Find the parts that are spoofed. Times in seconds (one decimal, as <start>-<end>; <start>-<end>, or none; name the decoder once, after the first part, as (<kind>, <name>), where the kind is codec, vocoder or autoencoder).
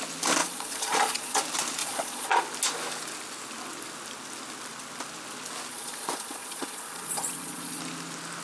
0.4-1.4 (vocoder, Vocos); 1.8-2.4; 5.7-7.8